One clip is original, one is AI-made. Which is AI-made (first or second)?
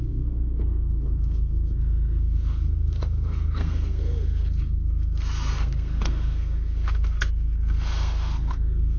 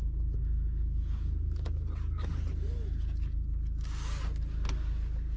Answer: first